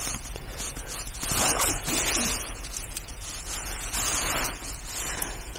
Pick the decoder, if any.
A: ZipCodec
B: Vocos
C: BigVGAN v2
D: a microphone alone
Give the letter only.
B